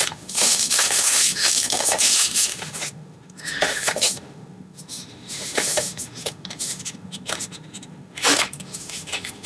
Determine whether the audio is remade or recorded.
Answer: remade